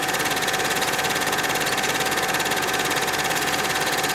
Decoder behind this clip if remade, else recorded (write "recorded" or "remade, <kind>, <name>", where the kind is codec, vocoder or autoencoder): remade, vocoder, Vocos